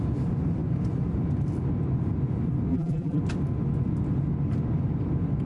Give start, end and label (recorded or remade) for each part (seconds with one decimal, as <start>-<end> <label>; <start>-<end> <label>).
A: 0.0-2.7 recorded; 2.7-3.2 remade; 3.2-5.5 recorded